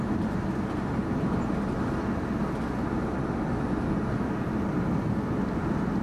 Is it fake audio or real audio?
real